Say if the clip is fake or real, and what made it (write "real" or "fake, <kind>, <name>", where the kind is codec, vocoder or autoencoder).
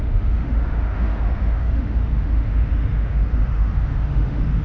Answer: fake, autoencoder, DAC-VAE